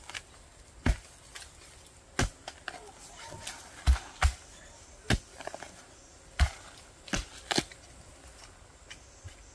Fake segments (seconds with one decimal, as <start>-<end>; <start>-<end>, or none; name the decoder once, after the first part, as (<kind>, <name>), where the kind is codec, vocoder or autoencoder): none

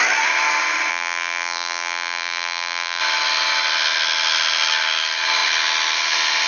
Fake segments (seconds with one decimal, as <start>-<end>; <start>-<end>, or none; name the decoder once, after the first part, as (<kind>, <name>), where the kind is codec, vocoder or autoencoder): 0.9-3.0 (vocoder, BigVGAN v2)